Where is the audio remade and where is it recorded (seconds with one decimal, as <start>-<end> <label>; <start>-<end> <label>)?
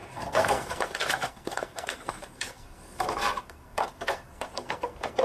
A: 0.0-5.2 remade